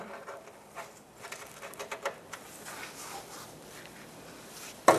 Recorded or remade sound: remade